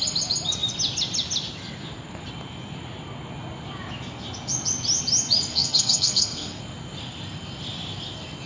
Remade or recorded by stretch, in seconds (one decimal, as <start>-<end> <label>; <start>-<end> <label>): 0.0-5.5 recorded; 5.5-6.6 remade; 6.6-8.5 recorded